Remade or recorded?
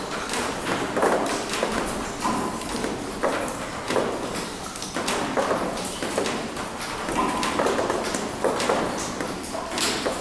recorded